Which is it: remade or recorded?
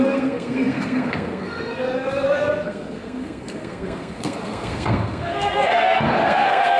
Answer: remade